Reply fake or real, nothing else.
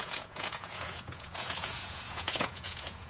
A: fake